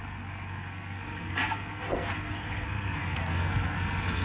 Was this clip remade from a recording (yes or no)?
yes